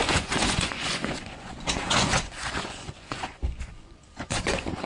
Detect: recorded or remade remade